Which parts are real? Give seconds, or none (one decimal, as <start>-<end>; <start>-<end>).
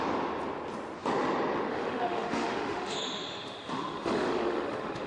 0.0-1.7